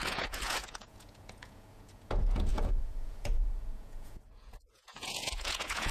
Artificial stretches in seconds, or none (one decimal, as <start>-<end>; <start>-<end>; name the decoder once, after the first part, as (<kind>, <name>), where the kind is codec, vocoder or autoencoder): 0.0-5.9 (vocoder, Vocos)